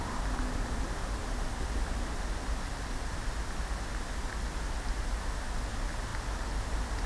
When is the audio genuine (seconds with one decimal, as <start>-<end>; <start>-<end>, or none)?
0.0-7.1